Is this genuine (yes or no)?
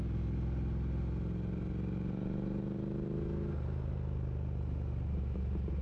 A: yes